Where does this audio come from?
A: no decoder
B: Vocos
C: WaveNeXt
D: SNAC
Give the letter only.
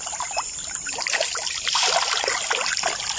A